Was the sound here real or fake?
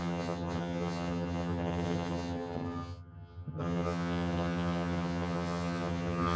fake